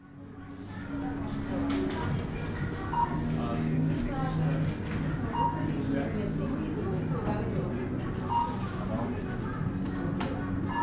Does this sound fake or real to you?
real